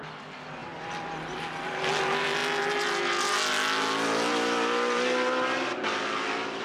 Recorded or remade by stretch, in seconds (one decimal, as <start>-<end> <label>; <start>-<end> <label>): 0.0-6.6 recorded